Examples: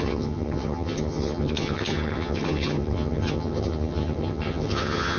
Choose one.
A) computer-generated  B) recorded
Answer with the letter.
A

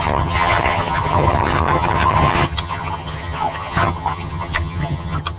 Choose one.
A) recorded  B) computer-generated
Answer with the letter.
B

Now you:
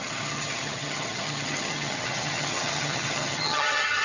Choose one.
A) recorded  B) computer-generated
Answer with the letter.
B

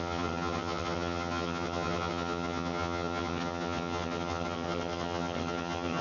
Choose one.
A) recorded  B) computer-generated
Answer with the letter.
B